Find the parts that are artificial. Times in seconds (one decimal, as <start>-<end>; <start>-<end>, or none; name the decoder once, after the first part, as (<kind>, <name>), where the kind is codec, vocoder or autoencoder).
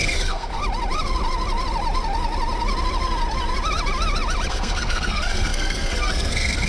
0.0-0.6 (codec, SNAC); 4.5-6.7